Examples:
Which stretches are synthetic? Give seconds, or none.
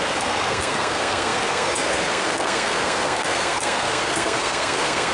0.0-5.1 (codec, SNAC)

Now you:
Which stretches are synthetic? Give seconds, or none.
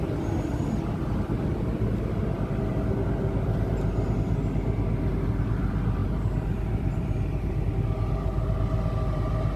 6.0-7.6 (vocoder, BigVGAN v2)